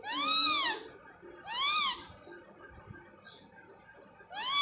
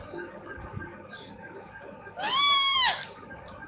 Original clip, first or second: first